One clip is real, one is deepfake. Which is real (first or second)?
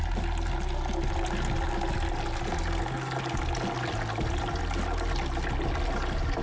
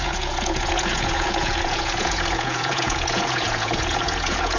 first